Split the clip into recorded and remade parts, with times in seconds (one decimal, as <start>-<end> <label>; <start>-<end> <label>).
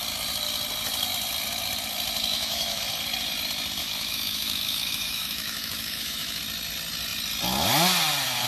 0.0-2.3 recorded; 2.3-2.8 remade; 2.8-3.8 recorded; 3.8-6.4 remade; 6.4-8.5 recorded